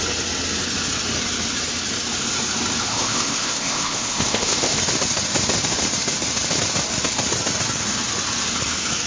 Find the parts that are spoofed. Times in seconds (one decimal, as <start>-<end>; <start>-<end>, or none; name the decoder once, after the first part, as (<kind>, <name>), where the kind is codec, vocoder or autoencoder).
2.9-4.8 (codec, ZipCodec)